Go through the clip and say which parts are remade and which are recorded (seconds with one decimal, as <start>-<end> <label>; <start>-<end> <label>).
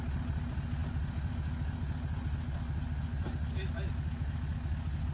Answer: 0.0-5.1 recorded